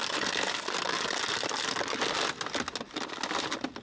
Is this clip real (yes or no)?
yes